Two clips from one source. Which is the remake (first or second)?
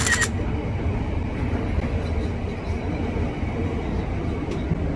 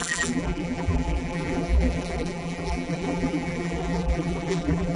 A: second